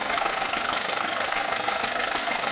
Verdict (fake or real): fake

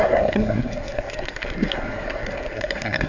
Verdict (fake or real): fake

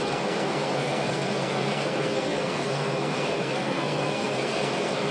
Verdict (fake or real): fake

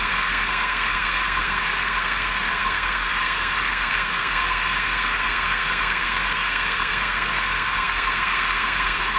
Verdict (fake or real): fake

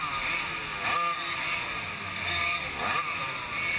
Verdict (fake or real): real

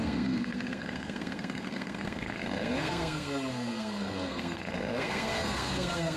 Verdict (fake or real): fake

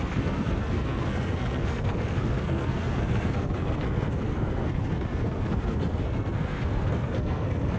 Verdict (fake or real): fake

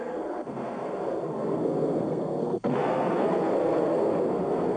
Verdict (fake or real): fake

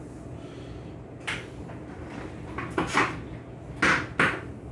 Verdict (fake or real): real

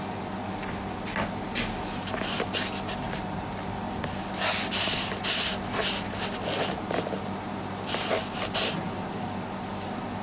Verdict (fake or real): real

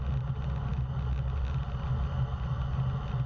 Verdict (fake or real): real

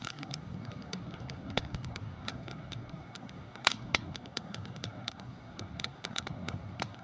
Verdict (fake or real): fake